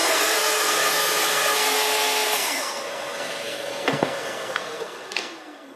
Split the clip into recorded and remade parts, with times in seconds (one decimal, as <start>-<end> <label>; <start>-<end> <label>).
0.0-5.8 remade